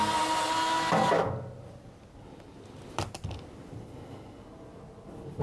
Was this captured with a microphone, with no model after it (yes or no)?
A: yes